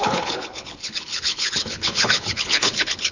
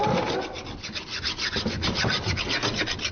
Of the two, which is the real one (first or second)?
second